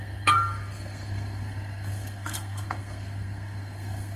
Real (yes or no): no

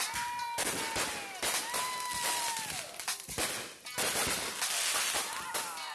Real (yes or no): yes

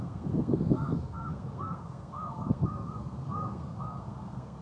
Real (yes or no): no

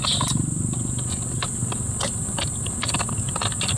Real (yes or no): yes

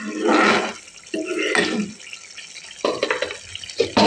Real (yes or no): yes